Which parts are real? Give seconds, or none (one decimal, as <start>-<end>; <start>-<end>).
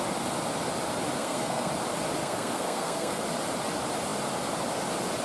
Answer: 0.0-1.2; 1.7-2.2; 3.2-5.2